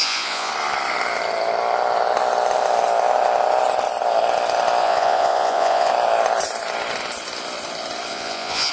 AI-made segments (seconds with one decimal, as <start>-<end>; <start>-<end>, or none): 0.0-0.5; 4.8-5.9; 8.1-8.7